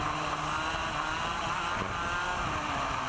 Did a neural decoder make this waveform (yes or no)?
no